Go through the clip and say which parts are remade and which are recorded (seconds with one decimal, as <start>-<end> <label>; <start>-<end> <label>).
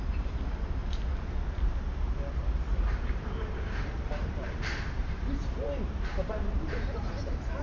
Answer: 0.0-0.8 remade; 0.8-2.9 recorded; 2.9-7.6 remade